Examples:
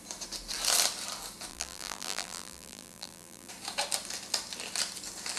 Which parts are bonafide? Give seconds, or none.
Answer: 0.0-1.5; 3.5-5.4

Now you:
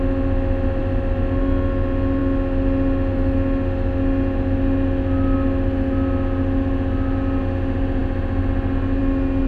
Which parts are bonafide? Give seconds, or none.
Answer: 0.0-9.5

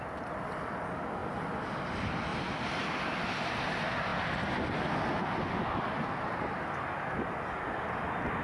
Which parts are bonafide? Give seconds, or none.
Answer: 0.0-2.3; 3.6-8.4

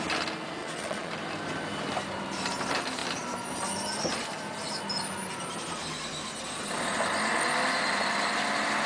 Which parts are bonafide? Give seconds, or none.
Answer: 0.0-0.6; 1.1-8.9

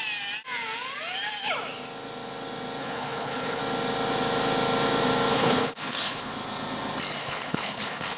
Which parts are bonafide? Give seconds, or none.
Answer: 0.0-2.8; 3.6-5.3; 6.3-7.2